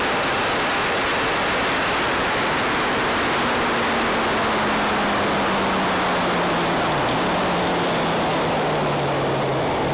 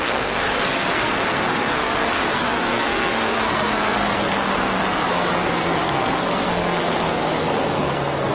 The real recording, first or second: first